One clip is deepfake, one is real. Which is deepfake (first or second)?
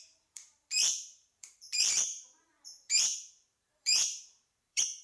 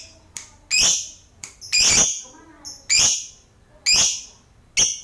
first